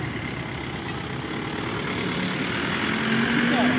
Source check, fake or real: real